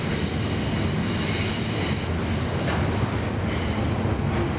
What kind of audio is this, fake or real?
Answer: real